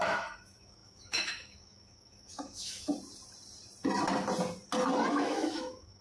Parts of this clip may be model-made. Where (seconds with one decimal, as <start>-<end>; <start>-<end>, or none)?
0.0-2.9; 5.1-6.0